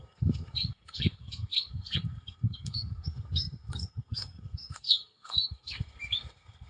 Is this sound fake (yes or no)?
yes